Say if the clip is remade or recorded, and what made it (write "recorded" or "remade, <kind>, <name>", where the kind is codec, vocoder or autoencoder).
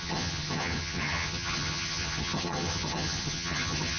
remade, vocoder, HiFi-GAN